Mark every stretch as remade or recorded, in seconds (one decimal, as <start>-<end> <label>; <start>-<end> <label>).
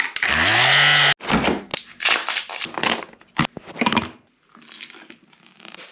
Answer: 0.0-5.9 recorded